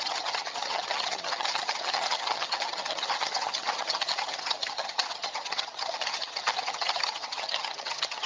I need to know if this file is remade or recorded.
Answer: remade